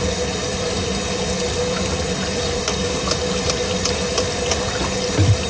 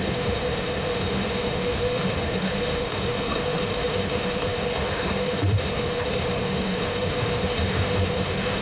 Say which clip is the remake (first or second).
second